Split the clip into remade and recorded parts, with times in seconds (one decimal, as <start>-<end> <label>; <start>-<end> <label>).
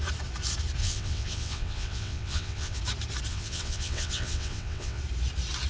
0.0-0.8 recorded; 0.8-2.8 remade; 2.8-3.3 recorded; 3.3-5.0 remade; 5.0-5.7 recorded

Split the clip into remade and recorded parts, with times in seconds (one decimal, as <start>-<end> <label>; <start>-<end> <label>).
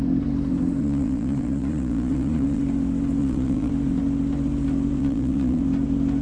0.0-0.8 recorded; 0.8-2.6 remade; 2.6-3.2 recorded; 3.2-3.7 remade; 3.7-5.0 recorded; 5.0-5.6 remade; 5.6-6.2 recorded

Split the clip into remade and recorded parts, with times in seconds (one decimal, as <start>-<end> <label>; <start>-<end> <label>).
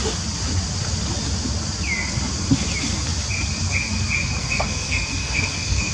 0.0-4.4 recorded; 4.4-5.9 remade